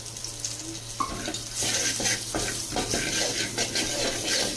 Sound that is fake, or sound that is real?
real